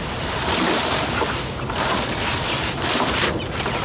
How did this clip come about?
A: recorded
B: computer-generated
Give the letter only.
A